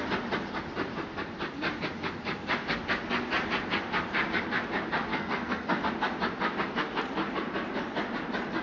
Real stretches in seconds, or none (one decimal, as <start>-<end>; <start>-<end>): 0.0-5.1; 5.8-8.6